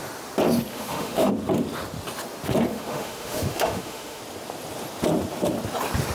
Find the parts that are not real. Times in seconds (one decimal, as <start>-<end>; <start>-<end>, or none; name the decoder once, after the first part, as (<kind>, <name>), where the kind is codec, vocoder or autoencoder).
0.7-1.3 (autoencoder, DAC-VAE); 2.7-4.2